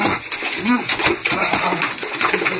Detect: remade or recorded remade